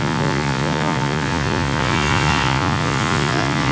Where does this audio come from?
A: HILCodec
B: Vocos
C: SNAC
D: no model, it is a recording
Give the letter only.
B